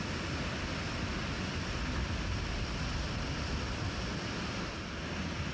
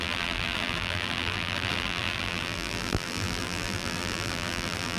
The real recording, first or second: first